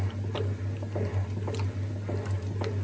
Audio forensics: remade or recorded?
recorded